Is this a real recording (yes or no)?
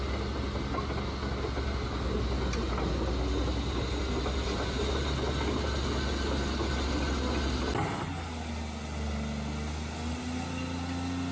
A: yes